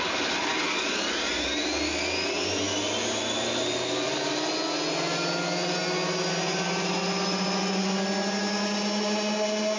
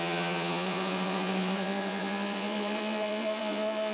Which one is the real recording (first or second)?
first